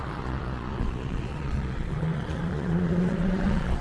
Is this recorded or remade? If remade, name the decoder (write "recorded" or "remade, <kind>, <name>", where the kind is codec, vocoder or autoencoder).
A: remade, vocoder, Vocos